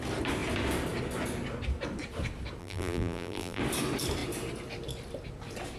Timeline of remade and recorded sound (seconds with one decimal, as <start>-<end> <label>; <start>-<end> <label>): 0.0-2.6 recorded; 2.6-3.6 remade; 3.6-5.8 recorded